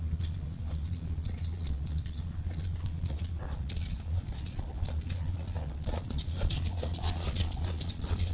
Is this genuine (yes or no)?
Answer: no